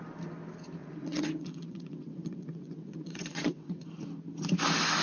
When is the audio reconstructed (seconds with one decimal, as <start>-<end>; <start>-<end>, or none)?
0.8-3.8